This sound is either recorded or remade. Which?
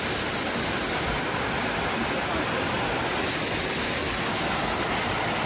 recorded